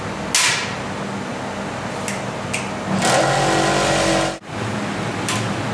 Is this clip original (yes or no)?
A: yes